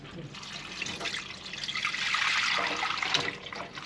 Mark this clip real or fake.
real